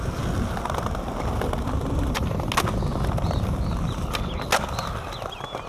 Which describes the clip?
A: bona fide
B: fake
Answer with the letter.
A